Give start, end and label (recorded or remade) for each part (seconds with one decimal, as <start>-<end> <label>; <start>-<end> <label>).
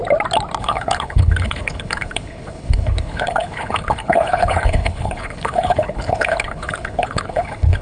0.0-0.6 recorded; 0.6-7.8 remade